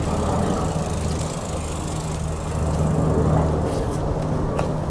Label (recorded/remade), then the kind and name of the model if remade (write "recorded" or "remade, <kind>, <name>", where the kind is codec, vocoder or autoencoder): recorded